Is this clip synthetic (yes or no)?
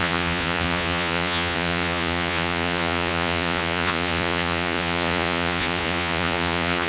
yes